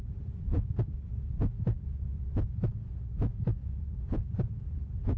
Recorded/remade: remade